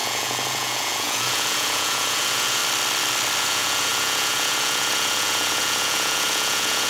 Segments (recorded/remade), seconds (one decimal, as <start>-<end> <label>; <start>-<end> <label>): 0.0-2.6 remade; 2.6-3.4 recorded; 3.4-6.9 remade